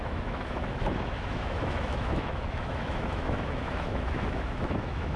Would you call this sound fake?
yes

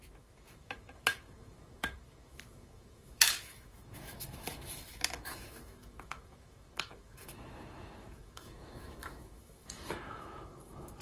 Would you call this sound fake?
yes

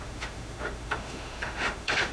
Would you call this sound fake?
yes